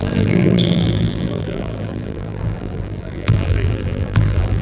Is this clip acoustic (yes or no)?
no